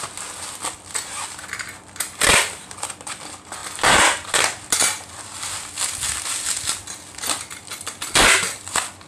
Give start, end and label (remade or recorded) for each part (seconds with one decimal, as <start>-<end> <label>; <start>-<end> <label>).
0.0-9.1 recorded